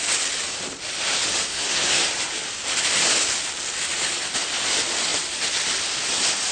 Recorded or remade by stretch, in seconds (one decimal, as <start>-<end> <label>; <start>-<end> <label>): 0.0-1.5 recorded; 1.5-2.0 remade; 2.0-6.5 recorded